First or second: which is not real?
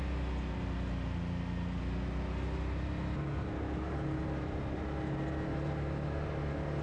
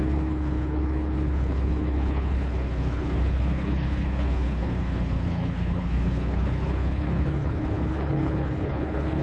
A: second